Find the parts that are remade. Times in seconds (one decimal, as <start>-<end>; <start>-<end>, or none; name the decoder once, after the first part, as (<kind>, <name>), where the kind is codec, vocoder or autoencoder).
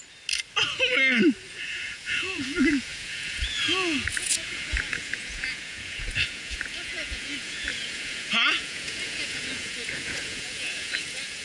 1.5-11.4 (vocoder, Vocos)